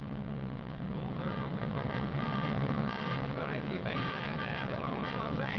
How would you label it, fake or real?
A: fake